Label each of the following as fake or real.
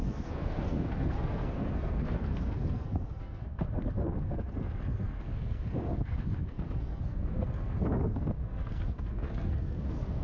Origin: fake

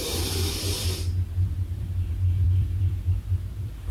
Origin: fake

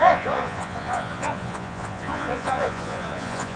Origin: fake